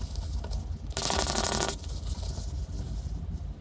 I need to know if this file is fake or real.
real